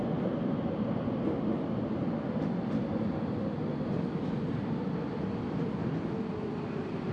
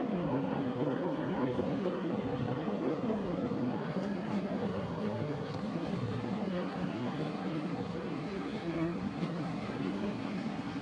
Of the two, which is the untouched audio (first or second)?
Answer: first